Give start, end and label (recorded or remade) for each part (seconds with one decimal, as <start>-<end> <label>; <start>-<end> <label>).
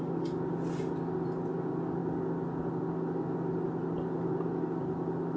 0.0-5.4 recorded